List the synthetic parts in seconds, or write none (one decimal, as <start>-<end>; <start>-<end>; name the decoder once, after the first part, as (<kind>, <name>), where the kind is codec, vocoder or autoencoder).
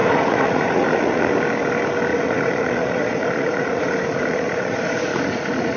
0.0-1.3 (vocoder, Vocos); 2.1-5.8